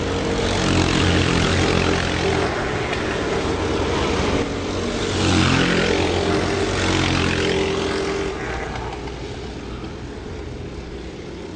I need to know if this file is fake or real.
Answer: real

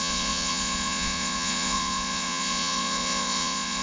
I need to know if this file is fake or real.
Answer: fake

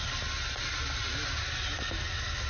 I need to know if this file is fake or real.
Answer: real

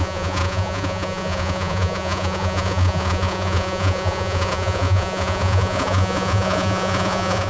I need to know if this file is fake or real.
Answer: fake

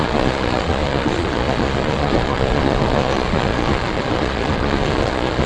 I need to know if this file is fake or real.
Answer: fake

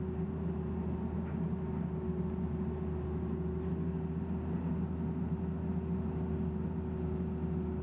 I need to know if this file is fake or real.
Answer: real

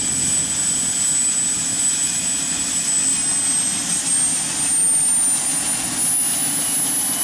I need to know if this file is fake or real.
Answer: real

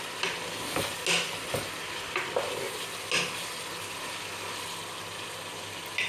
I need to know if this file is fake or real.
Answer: real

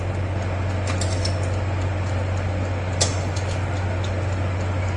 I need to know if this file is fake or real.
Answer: real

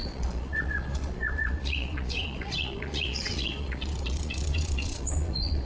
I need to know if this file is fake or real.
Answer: fake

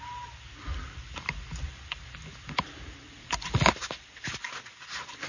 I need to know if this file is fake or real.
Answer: real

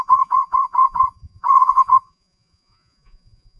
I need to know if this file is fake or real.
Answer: fake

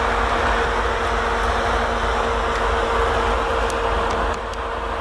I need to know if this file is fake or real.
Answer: real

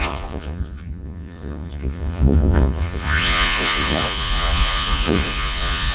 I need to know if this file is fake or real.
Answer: fake